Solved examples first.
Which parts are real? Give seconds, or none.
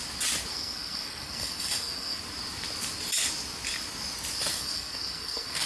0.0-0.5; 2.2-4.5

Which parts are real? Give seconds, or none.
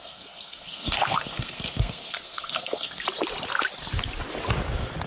3.0-5.1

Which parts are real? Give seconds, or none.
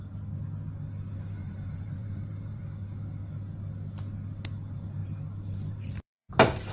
0.0-1.4; 2.6-5.0; 6.3-6.7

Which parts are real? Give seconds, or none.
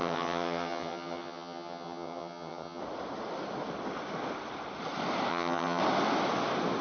2.8-5.3; 5.8-6.8